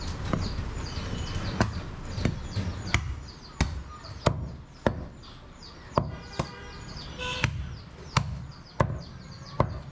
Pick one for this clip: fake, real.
real